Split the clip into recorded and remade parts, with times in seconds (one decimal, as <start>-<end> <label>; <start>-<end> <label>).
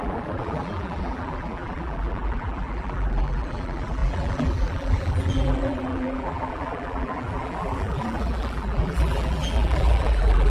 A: 0.0-10.5 remade